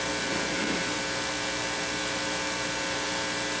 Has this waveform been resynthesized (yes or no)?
no